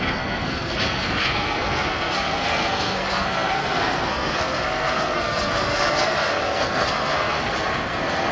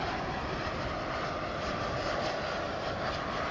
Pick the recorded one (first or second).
second